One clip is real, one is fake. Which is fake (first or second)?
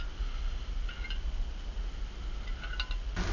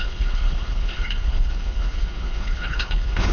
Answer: second